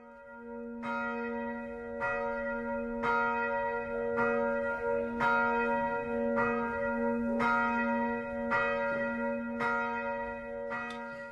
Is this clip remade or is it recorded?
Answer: recorded